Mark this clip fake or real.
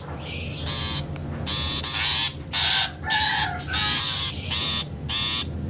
real